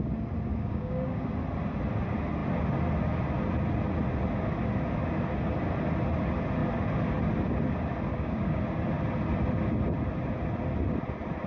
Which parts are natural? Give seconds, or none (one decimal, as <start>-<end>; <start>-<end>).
0.0-0.5; 1.3-8.1; 8.6-11.5